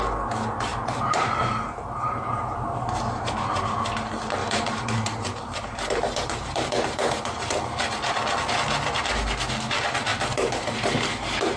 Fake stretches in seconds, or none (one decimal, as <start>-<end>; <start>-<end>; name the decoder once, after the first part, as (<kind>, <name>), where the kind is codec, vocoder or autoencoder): 0.7-3.5 (vocoder, BigVGAN v2); 4.4-7.6